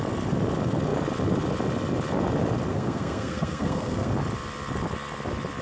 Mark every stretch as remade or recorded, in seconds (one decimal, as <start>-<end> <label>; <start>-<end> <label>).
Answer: 0.0-2.7 recorded; 2.7-4.1 remade; 4.1-5.6 recorded